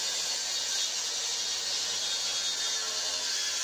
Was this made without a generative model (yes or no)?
yes